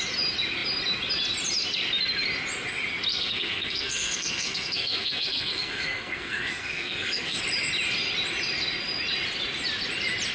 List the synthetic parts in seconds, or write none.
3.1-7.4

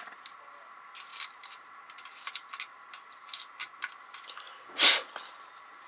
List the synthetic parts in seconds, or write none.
none